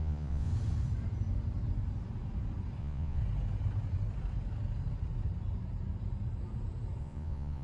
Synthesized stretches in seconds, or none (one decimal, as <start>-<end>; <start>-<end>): 0.0-0.5; 2.8-3.2; 7.0-7.6